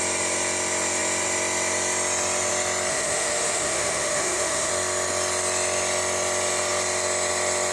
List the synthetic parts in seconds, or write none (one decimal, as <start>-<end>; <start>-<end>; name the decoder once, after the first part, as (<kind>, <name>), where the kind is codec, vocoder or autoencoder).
2.9-4.7 (autoencoder, DAC-VAE)